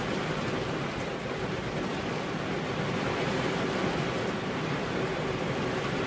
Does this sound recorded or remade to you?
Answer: recorded